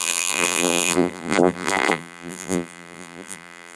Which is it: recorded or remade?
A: remade